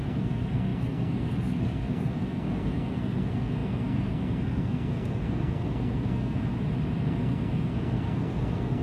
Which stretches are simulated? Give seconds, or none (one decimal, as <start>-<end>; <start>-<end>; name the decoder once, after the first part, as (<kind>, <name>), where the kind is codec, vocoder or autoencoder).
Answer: 0.0-6.5 (codec, SNAC); 7.0-8.8